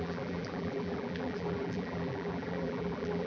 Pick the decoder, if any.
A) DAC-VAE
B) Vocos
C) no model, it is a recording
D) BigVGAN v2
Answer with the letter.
D